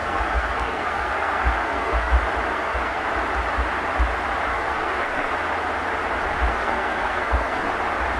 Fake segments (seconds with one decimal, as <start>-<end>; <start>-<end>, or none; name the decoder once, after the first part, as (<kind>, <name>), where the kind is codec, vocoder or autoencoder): 0.0-2.1 (codec, SNAC); 2.5-3.1; 4.5-5.3; 6.5-7.7